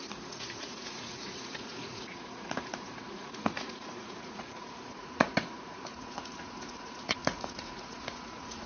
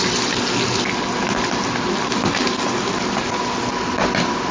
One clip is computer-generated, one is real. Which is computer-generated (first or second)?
first